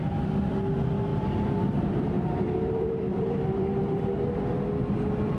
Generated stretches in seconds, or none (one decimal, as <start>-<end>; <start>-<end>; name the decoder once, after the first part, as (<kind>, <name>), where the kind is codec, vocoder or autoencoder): 1.1-4.3 (vocoder, BigVGAN v2)

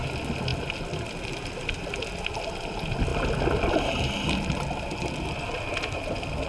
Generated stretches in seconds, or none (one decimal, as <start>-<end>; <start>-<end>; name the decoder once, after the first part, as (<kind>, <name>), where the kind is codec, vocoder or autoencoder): none